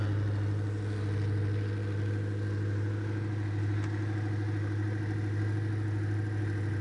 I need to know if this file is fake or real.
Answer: real